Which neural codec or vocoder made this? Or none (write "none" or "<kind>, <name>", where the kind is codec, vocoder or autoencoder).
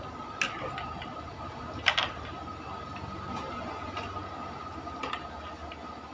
none